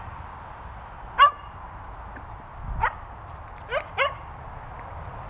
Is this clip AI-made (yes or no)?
no